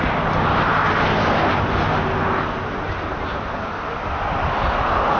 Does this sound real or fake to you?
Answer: real